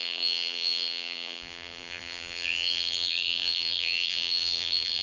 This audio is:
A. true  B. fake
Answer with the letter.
B